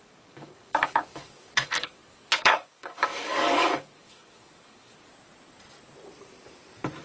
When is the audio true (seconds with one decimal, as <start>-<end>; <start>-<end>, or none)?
5.1-7.0

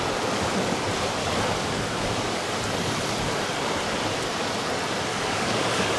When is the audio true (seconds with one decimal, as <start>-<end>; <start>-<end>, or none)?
0.0-1.2; 2.5-5.1

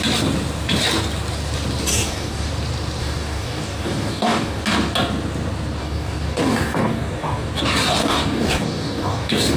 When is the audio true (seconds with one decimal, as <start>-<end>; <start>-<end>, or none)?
0.0-1.9; 2.5-3.0; 4.6-5.8; 7.5-8.0

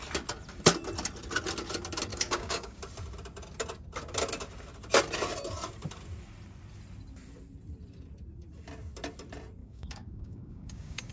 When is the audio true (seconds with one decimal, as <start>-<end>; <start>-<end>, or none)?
0.0-2.1; 2.8-9.6

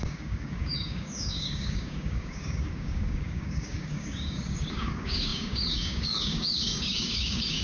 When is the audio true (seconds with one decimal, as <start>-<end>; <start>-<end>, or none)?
none

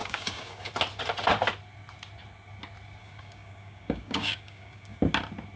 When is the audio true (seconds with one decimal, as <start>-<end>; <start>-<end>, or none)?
0.7-3.0; 5.0-5.6